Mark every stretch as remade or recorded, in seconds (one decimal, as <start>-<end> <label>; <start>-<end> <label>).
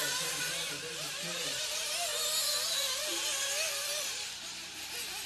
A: 0.0-2.1 remade; 2.1-2.7 recorded; 2.7-3.1 remade; 3.1-4.0 recorded; 4.0-5.3 remade